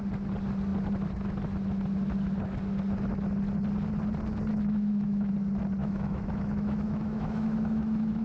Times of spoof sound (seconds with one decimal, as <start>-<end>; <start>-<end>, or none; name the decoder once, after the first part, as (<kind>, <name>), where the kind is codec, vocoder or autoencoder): 4.5-5.3 (autoencoder, DAC-VAE); 5.8-8.2